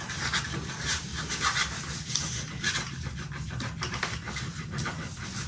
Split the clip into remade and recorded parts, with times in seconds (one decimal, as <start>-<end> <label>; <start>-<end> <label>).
0.0-1.1 remade; 1.1-2.9 recorded; 2.9-5.5 remade